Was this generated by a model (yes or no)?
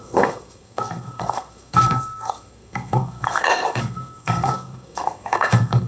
yes